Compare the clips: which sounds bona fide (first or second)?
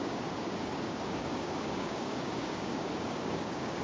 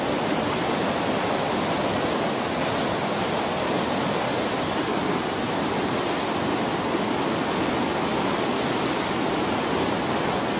second